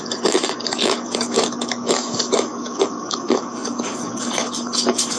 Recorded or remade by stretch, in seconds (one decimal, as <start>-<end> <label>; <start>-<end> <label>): 0.0-5.2 remade